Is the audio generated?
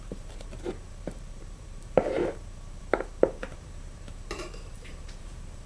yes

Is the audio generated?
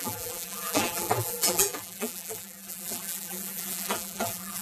yes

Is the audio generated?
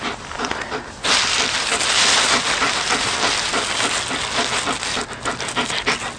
no